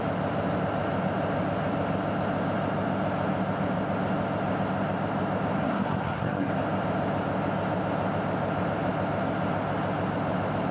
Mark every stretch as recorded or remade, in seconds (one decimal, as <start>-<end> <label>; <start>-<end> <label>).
0.0-5.6 recorded; 5.6-6.5 remade; 6.5-10.7 recorded